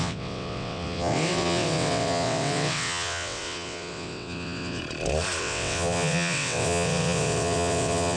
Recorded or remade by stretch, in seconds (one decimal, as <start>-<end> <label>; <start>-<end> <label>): 0.0-4.8 remade; 4.8-5.4 recorded; 5.4-8.2 remade